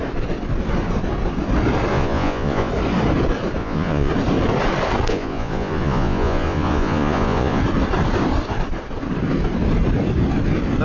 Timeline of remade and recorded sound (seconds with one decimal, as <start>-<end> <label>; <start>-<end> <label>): 0.0-1.9 recorded; 1.9-2.7 remade; 2.7-3.6 recorded; 3.6-4.1 remade; 4.1-5.1 recorded; 5.1-7.6 remade; 7.6-10.8 recorded